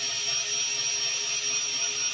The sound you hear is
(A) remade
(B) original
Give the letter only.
B